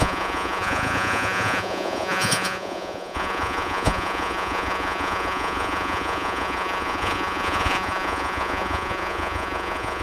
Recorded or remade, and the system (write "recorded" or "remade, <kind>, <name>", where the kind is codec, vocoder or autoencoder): remade, vocoder, Vocos